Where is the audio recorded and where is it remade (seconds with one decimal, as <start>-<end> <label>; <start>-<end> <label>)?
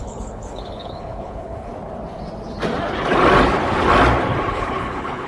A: 0.0-1.7 remade; 1.7-4.5 recorded; 4.5-5.3 remade